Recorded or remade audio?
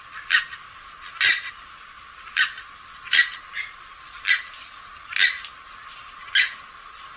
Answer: recorded